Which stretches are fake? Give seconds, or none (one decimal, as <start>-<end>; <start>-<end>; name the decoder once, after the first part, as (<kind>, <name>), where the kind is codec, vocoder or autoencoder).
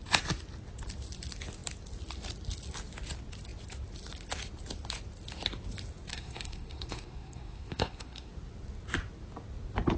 6.1-8.3 (codec, SNAC)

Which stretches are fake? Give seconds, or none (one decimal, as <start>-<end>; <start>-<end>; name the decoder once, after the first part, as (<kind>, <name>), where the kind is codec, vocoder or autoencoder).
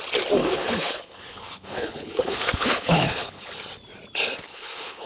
0.4-3.5 (codec, HILCodec); 4.5-5.1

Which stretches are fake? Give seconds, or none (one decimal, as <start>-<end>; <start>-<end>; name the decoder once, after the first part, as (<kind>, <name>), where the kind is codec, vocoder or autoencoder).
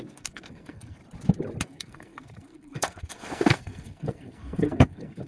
0.0-1.0 (codec, SNAC); 1.6-5.3